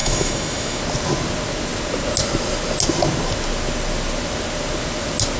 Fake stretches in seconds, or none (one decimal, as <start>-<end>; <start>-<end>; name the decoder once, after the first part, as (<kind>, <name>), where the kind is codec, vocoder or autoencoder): 0.0-0.8 (autoencoder, DAC-VAE)